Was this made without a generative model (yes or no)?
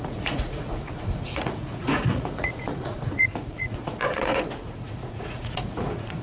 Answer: no